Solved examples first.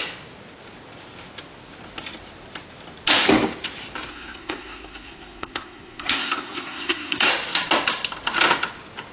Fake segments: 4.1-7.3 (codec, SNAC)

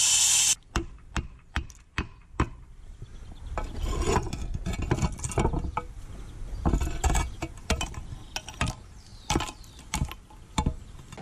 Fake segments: 2.2-3.1 (vocoder, BigVGAN v2); 9.1-9.9

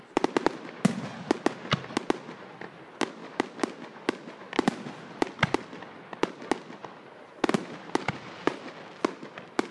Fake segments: none

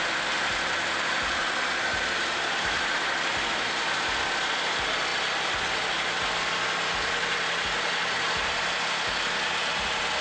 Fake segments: none

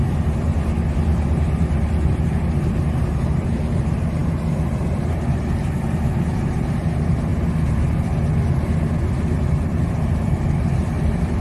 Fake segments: 0.0-7.3 (vocoder, BigVGAN v2); 9.1-11.4

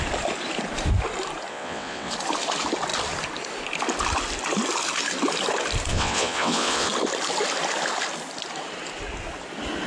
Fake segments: 1.5-2.1 (vocoder, WaveNeXt); 5.9-6.9

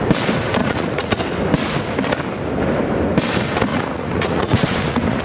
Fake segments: 0.6-1.1 (vocoder, Vocos); 3.7-5.2